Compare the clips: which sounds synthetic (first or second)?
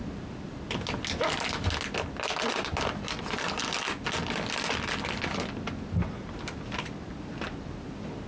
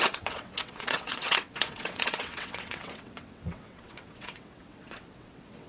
second